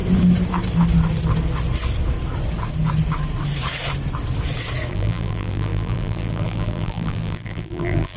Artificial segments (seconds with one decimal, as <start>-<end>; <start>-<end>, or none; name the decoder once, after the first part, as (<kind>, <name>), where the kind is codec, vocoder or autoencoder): 4.9-8.2 (vocoder, BigVGAN v2)